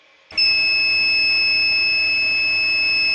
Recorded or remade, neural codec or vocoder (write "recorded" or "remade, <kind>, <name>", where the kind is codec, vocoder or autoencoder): recorded